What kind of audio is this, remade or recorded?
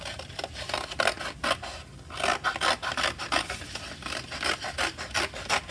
recorded